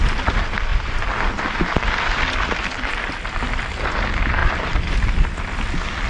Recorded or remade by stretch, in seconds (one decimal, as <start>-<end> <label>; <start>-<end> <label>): 0.0-0.7 recorded; 0.7-3.6 remade; 3.6-4.4 recorded; 4.4-5.4 remade; 5.4-6.1 recorded